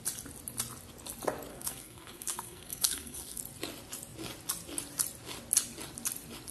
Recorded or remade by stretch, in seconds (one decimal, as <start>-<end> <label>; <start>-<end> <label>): 0.0-1.5 recorded; 1.5-3.4 remade; 3.4-6.5 recorded